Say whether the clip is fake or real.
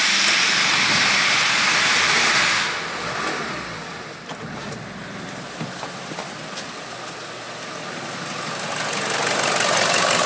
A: real